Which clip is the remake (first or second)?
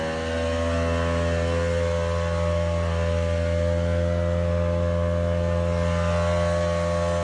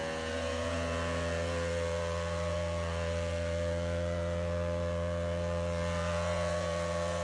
second